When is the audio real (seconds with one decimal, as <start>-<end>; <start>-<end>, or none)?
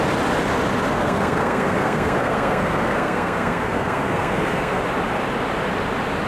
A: 0.0-1.0; 4.8-6.3